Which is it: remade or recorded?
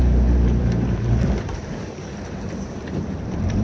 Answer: remade